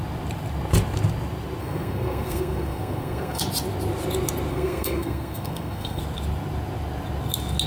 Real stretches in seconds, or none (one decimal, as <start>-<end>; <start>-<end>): 0.0-1.6; 3.4-4.5; 6.0-7.7